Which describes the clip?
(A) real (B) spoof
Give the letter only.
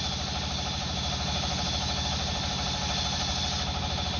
A